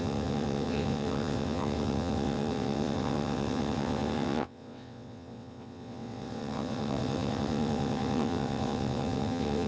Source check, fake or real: fake